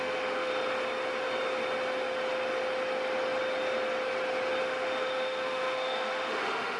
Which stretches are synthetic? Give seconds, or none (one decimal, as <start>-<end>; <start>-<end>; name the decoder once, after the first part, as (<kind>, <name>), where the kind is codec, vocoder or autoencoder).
0.0-0.5 (autoencoder, DAC-VAE); 4.6-6.8